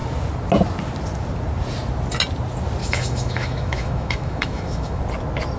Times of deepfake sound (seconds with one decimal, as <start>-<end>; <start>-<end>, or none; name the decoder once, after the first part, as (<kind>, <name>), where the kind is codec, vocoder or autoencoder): 2.8-5.0 (autoencoder, DAC-VAE)